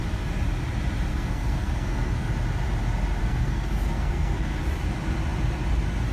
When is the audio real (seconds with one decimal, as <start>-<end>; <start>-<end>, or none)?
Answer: 0.0-1.1; 2.3-3.2; 4.6-6.1